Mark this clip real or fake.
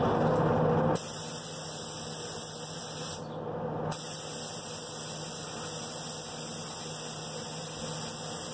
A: real